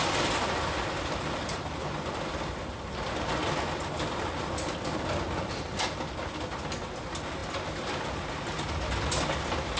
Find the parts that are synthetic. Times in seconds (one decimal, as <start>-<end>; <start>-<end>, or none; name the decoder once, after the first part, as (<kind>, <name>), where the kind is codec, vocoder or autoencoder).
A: none